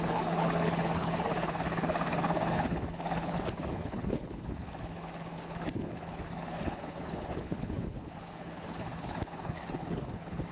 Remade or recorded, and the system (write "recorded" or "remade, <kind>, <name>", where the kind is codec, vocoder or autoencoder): remade, codec, HILCodec